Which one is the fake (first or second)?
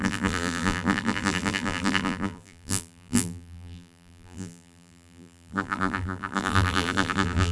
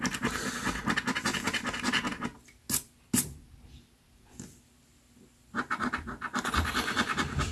first